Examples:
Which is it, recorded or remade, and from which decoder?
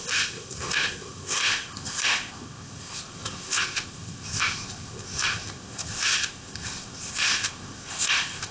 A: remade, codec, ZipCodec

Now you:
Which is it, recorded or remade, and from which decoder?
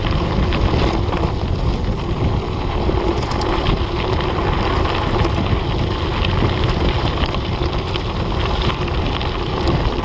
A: recorded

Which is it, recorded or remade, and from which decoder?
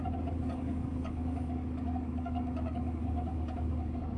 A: remade, codec, DAC